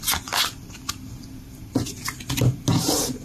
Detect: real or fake real